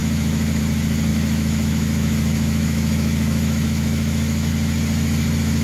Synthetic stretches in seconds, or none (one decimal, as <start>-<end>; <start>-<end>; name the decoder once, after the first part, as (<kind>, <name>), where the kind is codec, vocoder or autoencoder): 0.0-0.6 (autoencoder, DAC-VAE); 1.1-4.5